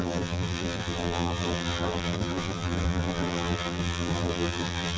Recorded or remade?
remade